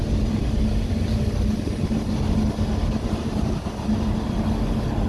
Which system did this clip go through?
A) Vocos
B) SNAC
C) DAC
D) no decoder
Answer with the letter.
D